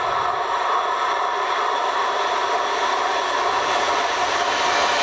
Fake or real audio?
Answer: real